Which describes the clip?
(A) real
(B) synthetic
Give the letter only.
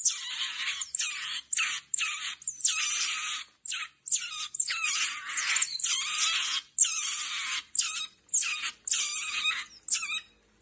A